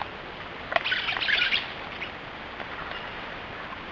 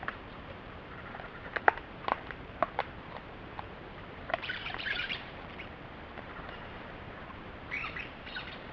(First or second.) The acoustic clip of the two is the first